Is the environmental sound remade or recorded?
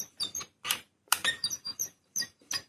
remade